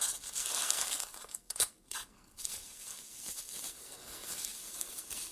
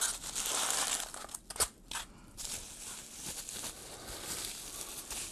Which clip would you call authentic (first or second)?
second